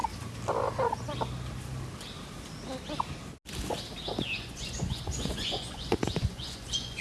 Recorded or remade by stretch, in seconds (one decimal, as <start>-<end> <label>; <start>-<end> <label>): 0.0-4.2 recorded; 4.2-7.0 remade